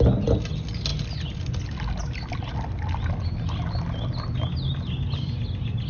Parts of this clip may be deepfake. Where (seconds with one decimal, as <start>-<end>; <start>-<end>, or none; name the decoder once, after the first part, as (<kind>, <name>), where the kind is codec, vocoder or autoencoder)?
none